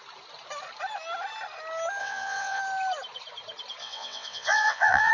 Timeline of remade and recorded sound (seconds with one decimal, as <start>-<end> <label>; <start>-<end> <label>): 0.0-2.0 recorded; 2.0-2.6 remade; 2.6-3.8 recorded; 3.8-5.1 remade